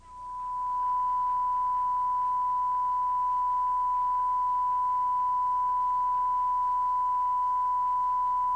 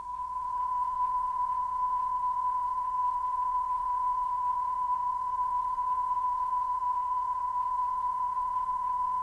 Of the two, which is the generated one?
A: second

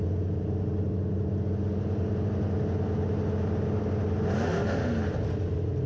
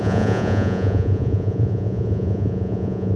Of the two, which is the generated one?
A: second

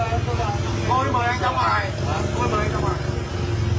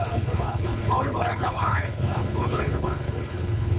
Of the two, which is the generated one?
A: second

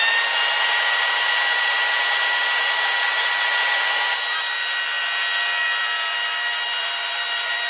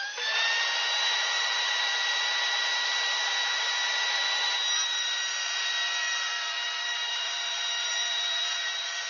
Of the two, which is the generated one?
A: second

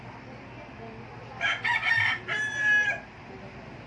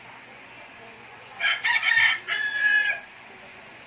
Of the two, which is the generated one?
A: second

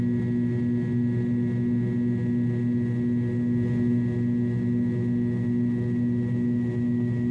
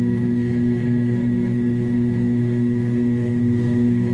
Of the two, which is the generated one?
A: second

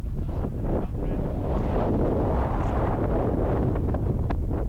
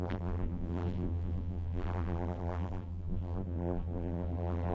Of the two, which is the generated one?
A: second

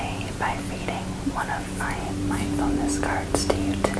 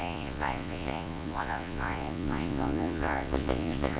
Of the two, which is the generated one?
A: second